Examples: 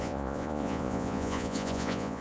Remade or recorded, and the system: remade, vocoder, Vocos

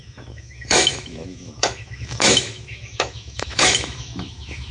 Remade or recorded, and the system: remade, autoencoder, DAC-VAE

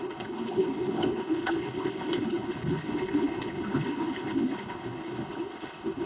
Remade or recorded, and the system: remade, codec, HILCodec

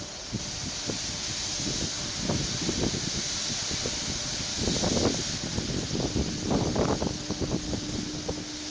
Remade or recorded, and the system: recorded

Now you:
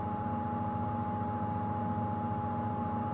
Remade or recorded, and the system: recorded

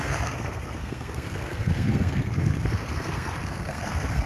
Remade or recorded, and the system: remade, codec, SNAC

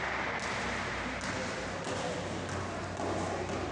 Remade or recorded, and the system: recorded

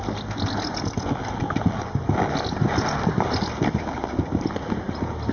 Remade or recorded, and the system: recorded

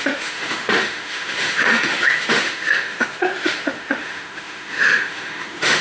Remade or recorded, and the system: remade, autoencoder, DAC-VAE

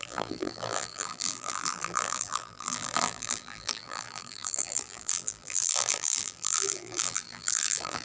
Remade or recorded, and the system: remade, vocoder, BigVGAN v2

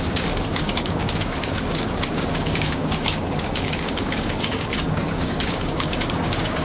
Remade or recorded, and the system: remade, codec, DAC